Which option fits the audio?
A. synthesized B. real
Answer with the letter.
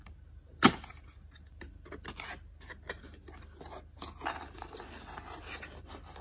B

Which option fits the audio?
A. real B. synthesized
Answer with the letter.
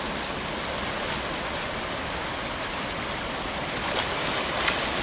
A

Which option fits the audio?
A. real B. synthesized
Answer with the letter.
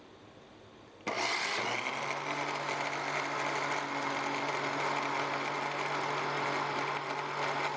A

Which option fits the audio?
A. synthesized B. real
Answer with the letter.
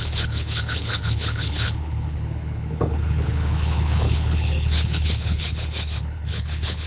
A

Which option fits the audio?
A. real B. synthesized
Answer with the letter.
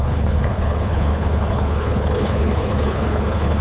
B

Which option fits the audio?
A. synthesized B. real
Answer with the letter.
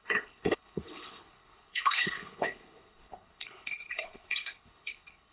A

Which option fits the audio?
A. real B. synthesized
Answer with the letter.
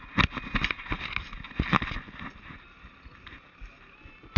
A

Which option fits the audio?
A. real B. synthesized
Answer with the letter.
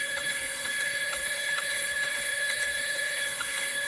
B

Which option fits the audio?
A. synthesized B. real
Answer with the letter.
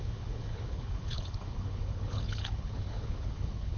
A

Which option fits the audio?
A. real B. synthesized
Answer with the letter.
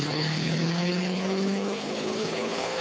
B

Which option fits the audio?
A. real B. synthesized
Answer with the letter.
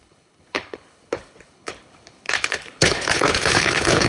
B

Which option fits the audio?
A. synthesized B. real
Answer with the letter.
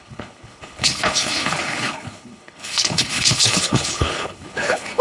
A